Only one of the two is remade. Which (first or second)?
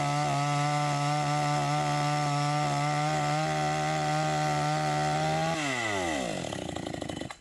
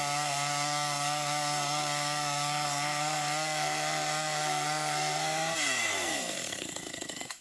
second